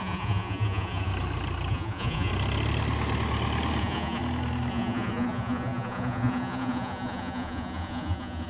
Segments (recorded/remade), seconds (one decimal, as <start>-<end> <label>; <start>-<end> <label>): 0.0-1.1 remade; 1.1-1.7 recorded; 1.7-2.3 remade; 2.3-3.8 recorded; 3.8-4.2 remade; 4.2-4.7 recorded; 4.7-8.5 remade